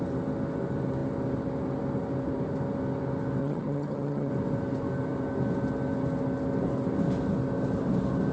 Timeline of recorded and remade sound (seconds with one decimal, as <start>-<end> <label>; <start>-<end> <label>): 0.0-3.4 recorded; 3.4-4.3 remade; 4.3-8.3 recorded